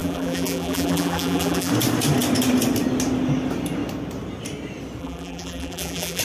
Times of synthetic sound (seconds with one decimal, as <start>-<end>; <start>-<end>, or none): 0.0-1.7; 5.0-6.2